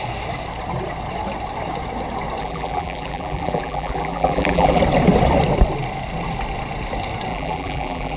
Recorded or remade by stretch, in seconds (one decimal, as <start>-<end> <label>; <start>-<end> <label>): 0.0-2.4 recorded; 2.4-4.8 remade; 4.8-7.3 recorded; 7.3-8.2 remade